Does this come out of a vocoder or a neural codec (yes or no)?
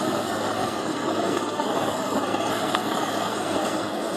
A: yes